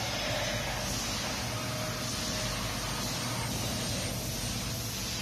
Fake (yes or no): no